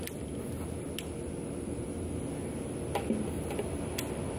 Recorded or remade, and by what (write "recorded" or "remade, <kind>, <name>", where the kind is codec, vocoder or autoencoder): recorded